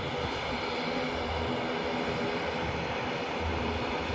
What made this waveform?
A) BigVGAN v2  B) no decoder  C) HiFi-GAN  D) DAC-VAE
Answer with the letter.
B